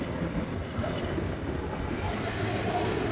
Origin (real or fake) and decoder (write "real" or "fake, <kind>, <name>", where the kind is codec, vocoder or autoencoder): real